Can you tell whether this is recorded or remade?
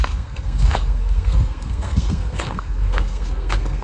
remade